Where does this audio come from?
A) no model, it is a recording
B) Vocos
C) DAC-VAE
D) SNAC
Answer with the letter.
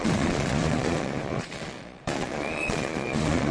B